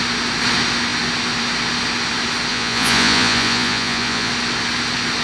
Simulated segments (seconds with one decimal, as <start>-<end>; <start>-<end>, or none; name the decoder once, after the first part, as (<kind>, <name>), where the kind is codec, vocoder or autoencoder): 2.5-4.3 (vocoder, Vocos)